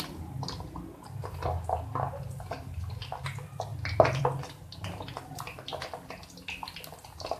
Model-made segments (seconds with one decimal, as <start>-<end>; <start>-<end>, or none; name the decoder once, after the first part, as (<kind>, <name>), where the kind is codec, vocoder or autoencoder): none